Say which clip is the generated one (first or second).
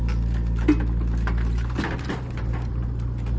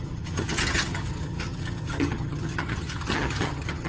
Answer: second